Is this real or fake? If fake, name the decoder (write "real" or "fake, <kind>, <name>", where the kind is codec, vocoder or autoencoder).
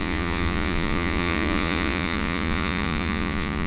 fake, vocoder, Vocos